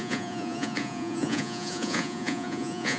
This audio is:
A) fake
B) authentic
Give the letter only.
A